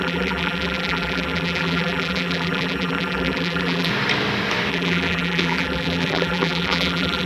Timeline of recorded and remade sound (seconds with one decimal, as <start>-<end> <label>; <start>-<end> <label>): 0.0-3.9 remade; 3.9-4.7 recorded; 4.7-7.3 remade